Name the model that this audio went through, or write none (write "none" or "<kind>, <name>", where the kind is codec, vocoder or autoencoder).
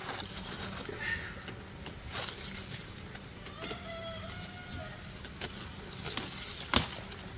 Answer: none